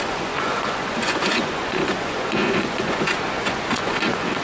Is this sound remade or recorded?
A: remade